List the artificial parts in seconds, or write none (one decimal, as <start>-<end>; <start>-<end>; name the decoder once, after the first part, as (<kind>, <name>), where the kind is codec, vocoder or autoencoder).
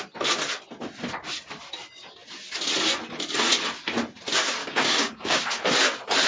4.6-5.4 (codec, DAC)